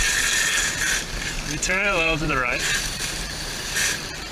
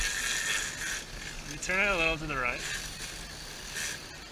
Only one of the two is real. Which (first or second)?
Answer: second